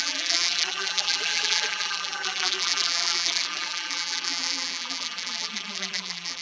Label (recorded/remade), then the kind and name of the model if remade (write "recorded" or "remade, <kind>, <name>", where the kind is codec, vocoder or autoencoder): remade, vocoder, BigVGAN v2